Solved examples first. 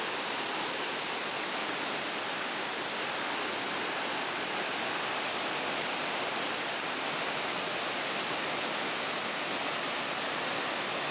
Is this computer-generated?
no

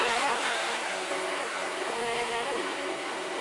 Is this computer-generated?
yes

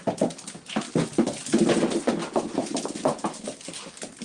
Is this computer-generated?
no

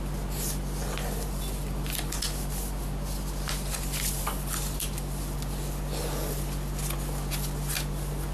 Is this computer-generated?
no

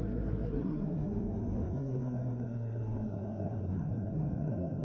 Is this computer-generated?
yes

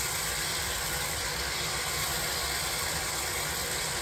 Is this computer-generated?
no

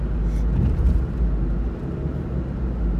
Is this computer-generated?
no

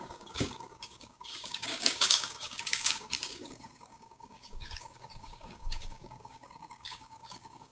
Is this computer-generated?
yes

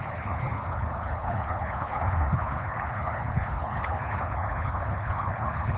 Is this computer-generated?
yes